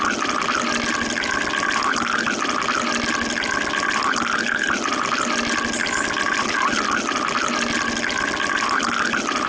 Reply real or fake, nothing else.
real